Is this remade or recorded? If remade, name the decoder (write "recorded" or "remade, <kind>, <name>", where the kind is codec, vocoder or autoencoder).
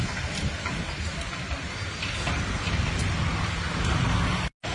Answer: recorded